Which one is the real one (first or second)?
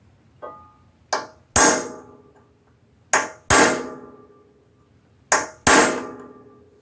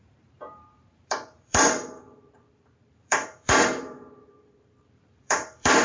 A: first